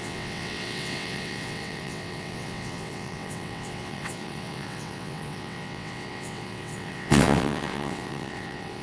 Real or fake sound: fake